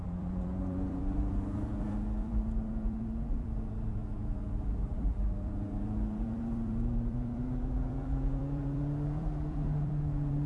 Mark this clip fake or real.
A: fake